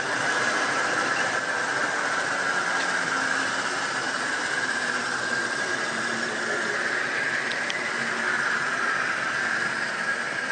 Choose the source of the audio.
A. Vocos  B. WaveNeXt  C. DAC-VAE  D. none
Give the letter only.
D